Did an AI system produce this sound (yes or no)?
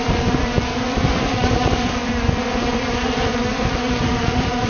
yes